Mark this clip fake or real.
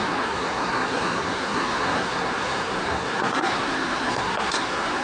fake